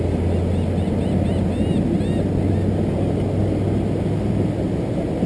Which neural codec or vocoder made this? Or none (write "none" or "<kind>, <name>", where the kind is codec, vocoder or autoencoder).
none